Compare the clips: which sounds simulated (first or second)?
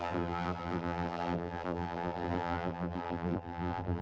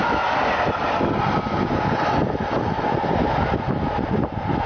first